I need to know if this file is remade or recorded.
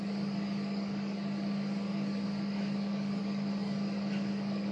remade